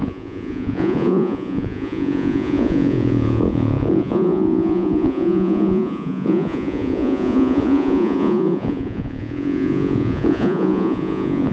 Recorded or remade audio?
remade